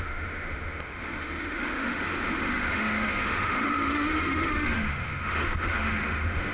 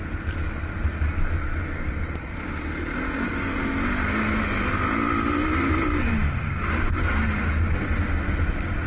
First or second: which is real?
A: second